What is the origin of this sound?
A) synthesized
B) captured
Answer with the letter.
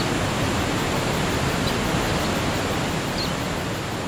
B